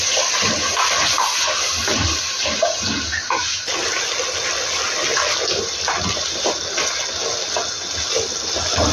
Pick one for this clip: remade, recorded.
recorded